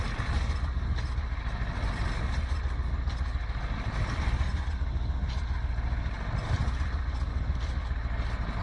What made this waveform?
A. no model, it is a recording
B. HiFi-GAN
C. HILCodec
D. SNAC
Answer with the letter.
A